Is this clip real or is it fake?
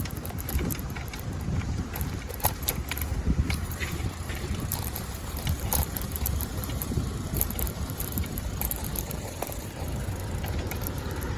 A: fake